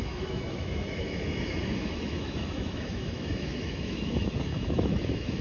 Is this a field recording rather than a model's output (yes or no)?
no